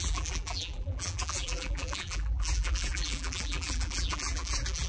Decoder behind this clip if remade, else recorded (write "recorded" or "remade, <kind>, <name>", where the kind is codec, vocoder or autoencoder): remade, vocoder, BigVGAN v2